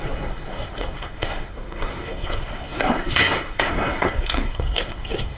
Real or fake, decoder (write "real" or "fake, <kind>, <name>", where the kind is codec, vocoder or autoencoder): fake, codec, SNAC